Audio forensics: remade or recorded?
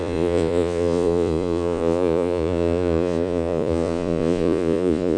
remade